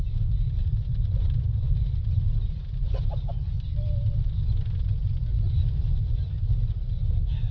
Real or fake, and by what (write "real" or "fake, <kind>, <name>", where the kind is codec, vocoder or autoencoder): fake, vocoder, BigVGAN v2